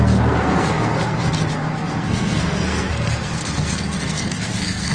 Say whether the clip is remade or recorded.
remade